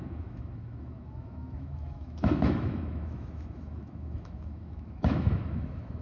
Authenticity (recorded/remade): remade